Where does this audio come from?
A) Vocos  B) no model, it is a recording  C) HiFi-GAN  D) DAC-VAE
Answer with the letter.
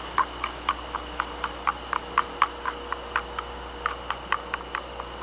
B